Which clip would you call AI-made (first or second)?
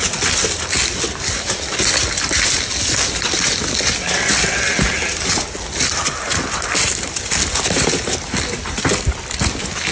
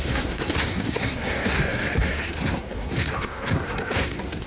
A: second